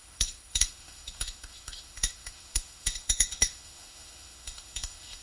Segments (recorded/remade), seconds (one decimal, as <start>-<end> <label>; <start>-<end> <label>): 0.0-5.2 remade